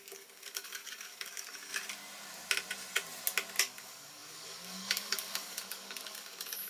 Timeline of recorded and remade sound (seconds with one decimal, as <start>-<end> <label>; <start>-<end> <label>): 0.0-1.7 remade; 1.7-3.6 recorded; 3.6-6.7 remade